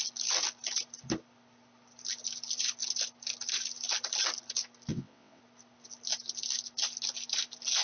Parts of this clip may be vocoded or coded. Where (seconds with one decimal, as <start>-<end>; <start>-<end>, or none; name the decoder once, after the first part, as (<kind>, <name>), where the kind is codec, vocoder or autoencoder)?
4.9-5.4 (vocoder, WaveNeXt)